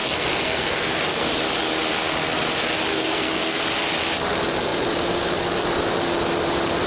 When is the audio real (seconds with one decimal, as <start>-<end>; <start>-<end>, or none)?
1.3-2.9; 3.6-6.9